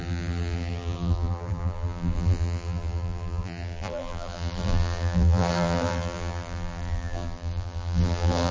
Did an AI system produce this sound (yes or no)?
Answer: yes